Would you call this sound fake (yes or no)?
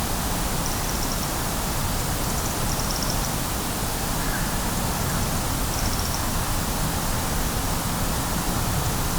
yes